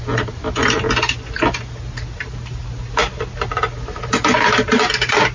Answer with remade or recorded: recorded